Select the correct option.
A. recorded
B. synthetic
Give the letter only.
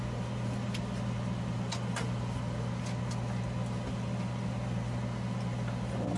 A